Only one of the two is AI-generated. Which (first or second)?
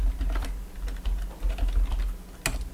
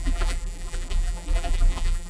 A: second